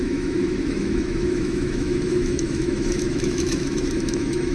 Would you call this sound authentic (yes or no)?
no